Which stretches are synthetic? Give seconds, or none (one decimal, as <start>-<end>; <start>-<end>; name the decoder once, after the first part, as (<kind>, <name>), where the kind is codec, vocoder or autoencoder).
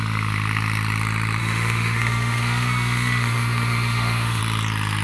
1.4-4.4 (autoencoder, DAC-VAE)